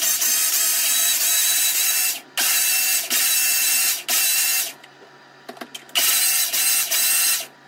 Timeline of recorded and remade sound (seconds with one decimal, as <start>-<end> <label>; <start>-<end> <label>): 0.0-0.7 recorded; 0.7-1.6 remade; 1.6-7.7 recorded